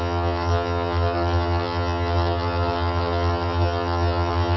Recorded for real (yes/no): no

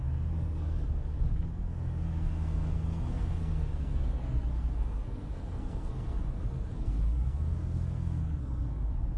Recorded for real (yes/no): no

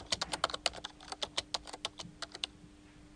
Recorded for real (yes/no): yes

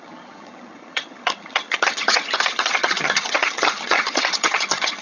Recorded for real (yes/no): no